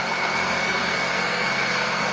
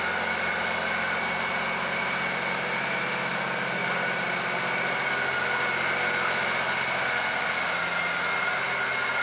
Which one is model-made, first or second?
first